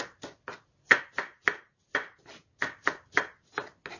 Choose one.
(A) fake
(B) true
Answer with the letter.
B